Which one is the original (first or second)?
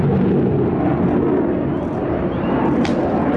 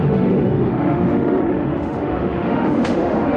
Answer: first